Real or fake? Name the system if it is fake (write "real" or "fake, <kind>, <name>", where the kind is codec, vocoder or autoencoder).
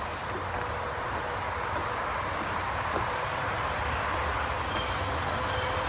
real